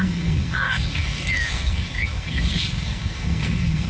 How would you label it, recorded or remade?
remade